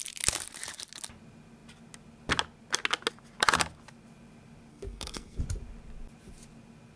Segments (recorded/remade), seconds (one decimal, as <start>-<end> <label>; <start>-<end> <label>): 0.0-4.7 recorded; 4.7-5.4 remade; 5.4-7.0 recorded